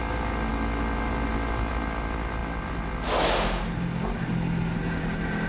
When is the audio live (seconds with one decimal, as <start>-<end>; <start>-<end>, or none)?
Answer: 0.0-5.5